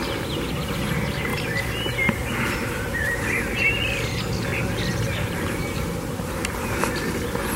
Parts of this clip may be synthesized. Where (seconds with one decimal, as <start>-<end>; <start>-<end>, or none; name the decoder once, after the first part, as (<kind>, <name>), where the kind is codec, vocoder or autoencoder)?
1.3-4.0 (vocoder, BigVGAN v2); 4.5-6.8

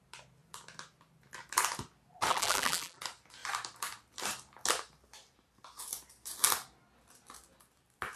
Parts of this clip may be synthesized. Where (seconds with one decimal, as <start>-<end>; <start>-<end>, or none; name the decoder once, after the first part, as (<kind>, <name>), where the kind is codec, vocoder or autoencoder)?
2.3-3.0 (vocoder, BigVGAN v2)

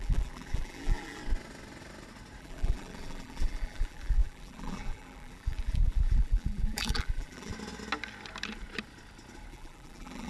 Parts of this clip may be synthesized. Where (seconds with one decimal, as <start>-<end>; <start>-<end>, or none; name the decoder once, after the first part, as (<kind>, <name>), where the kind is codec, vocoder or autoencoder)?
0.0-1.2 (vocoder, BigVGAN v2); 2.4-7.5; 9.5-10.3

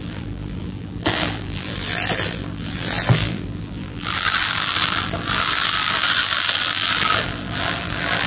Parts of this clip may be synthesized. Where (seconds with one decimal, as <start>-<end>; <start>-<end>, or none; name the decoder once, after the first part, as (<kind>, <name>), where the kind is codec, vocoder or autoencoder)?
0.0-8.3 (vocoder, BigVGAN v2)

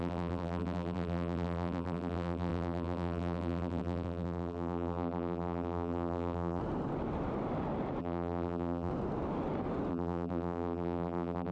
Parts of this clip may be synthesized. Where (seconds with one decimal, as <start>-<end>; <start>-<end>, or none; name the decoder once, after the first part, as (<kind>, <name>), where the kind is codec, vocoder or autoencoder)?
0.0-6.6 (vocoder, BigVGAN v2); 8.0-8.9; 9.9-11.5

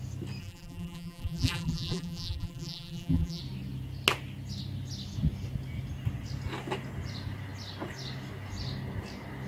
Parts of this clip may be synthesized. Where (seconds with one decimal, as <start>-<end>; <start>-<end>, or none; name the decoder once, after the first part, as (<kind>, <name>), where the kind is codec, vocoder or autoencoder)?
0.4-3.4 (vocoder, BigVGAN v2)

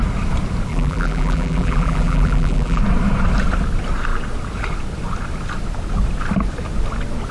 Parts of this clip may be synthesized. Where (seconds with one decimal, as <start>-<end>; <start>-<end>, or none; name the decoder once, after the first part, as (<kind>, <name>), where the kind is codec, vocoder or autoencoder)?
0.7-2.8 (vocoder, BigVGAN v2)